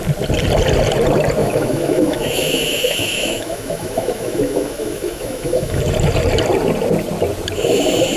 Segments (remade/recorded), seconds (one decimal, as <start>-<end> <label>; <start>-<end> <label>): 0.0-1.4 recorded; 1.4-5.8 remade; 5.8-8.2 recorded